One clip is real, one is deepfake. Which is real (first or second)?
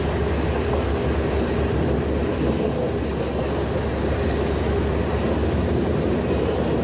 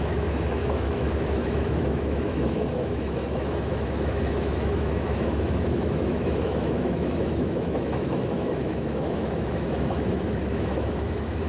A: first